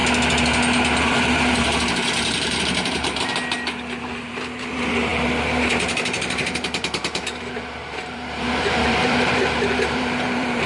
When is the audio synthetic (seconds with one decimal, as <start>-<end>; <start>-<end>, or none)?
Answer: 1.0-3.3; 4.0-10.7